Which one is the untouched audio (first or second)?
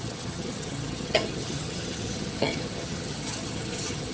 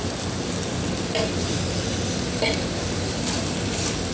second